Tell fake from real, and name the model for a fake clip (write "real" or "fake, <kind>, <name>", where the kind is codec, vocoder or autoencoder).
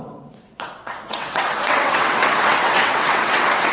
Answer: fake, vocoder, WaveNeXt